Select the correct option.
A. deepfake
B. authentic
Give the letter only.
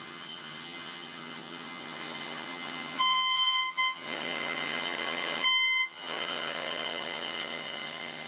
A